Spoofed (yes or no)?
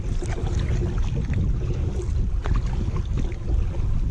no